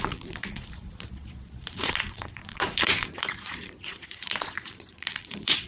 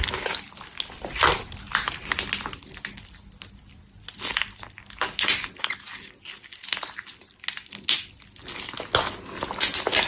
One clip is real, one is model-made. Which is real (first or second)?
second